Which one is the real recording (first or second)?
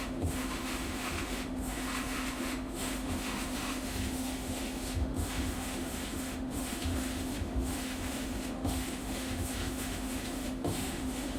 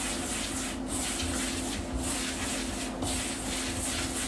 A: second